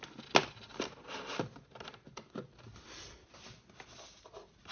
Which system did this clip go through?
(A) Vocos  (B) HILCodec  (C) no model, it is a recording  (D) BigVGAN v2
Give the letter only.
C